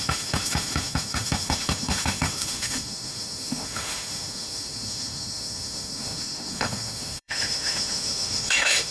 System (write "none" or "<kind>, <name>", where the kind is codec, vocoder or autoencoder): autoencoder, DAC-VAE